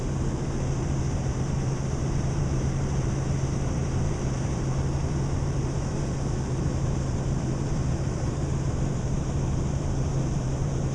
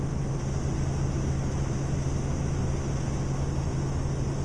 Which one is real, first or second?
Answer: second